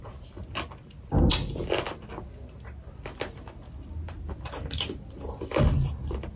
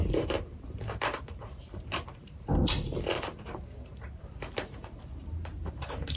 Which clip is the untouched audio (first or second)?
first